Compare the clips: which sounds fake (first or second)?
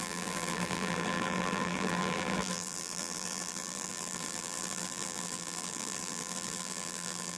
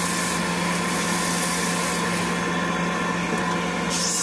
first